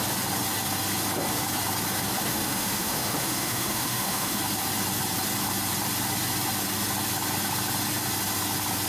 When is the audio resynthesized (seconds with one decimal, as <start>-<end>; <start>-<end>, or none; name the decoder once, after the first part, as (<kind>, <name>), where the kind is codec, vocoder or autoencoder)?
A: 2.3-4.4 (autoencoder, DAC-VAE)